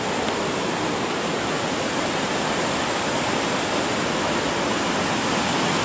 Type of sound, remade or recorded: recorded